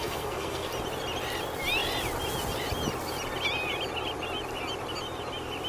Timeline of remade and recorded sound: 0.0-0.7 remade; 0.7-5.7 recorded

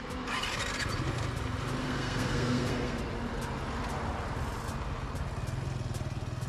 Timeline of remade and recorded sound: 0.0-1.8 recorded; 1.8-3.0 remade; 3.0-6.5 recorded